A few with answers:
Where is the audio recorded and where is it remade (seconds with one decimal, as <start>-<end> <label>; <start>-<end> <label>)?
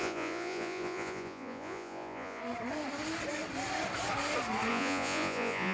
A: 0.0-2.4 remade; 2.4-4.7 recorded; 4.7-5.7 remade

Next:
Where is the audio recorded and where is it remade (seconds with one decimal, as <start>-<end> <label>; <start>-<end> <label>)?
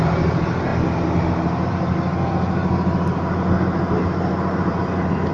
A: 0.0-5.3 recorded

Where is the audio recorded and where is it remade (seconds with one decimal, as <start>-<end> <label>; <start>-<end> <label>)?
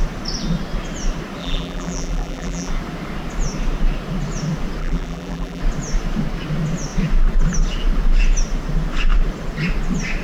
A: 0.0-1.4 recorded; 1.4-2.7 remade; 2.7-4.8 recorded; 4.8-5.6 remade; 5.6-10.2 recorded